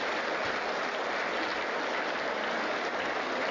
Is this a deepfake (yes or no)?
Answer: no